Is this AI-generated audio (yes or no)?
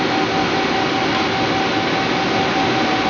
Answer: no